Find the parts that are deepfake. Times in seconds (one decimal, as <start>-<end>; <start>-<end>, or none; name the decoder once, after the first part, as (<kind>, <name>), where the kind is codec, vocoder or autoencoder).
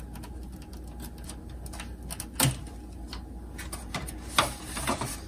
none